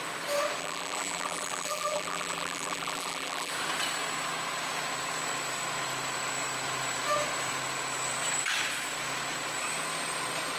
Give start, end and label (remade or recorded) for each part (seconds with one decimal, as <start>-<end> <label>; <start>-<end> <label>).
0.0-0.6 recorded; 0.6-3.5 remade; 3.5-10.6 recorded